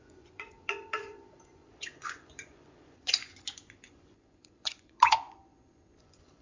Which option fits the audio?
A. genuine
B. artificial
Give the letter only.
B